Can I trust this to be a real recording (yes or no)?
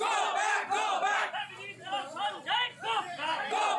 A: yes